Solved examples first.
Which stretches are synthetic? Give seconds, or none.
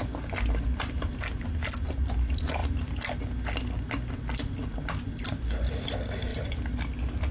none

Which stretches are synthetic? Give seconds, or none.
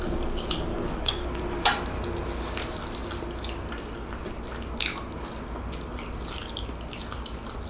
0.7-1.4